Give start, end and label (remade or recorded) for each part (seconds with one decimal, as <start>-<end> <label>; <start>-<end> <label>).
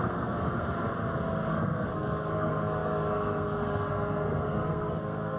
0.0-0.8 remade; 0.8-1.5 recorded; 1.5-5.4 remade